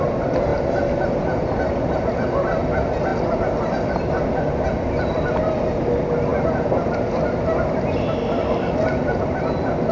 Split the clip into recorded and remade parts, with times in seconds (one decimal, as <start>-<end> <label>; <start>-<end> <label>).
0.0-9.9 recorded